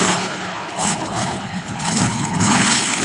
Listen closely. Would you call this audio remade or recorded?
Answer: remade